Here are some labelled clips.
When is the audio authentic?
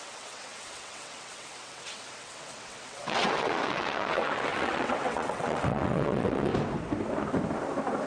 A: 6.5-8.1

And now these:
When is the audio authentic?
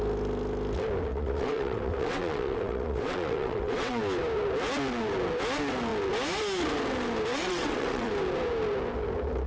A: 0.0-1.1; 4.0-7.3; 8.1-9.5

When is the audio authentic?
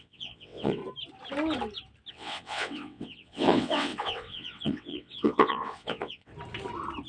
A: 0.8-2.1; 6.3-7.1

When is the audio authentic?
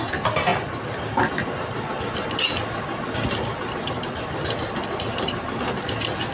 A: 0.0-6.3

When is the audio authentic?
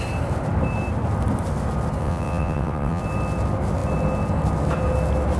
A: 0.0-2.0; 3.0-5.4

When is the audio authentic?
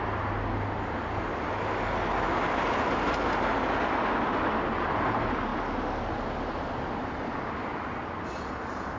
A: 0.0-9.0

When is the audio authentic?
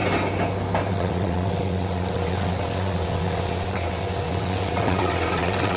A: 0.0-0.9